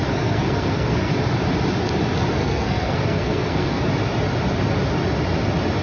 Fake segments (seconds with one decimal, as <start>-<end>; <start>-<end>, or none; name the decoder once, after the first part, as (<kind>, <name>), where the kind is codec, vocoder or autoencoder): 0.0-1.1 (codec, SNAC); 2.4-3.8